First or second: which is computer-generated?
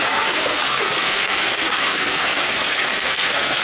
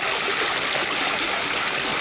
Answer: first